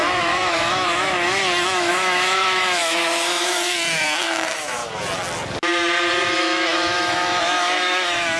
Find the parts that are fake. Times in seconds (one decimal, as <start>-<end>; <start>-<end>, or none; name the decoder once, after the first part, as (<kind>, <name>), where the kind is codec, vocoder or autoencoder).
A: 0.0-4.8 (autoencoder, DAC-VAE); 6.4-8.4